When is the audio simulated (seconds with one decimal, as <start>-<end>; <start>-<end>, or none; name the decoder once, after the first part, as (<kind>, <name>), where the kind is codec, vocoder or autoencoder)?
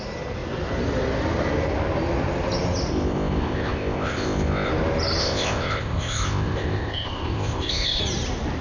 2.9-4.7 (codec, ZipCodec); 5.2-8.0